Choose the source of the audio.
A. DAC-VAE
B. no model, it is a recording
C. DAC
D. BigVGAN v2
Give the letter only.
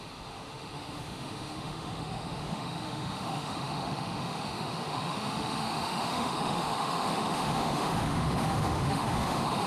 A